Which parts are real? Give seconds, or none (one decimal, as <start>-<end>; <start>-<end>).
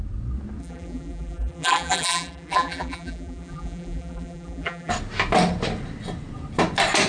0.0-0.6; 4.9-7.1